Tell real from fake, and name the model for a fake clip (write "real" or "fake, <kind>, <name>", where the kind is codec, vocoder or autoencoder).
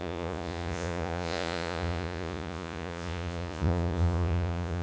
fake, vocoder, Vocos